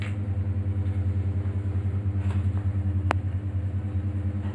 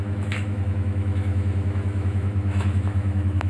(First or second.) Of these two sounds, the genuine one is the first